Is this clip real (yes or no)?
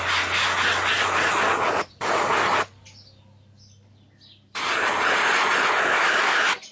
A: yes